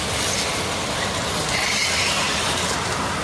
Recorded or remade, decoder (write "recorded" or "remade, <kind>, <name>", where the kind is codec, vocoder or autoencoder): recorded